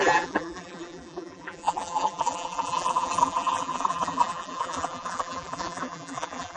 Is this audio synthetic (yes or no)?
yes